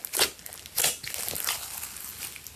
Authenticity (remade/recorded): recorded